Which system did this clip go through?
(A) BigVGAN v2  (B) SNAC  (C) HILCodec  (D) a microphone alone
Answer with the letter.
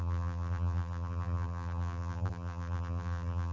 A